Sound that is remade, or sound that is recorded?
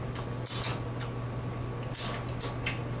recorded